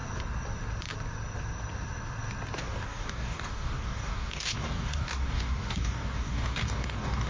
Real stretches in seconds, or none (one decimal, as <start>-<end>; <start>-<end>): 0.0-2.6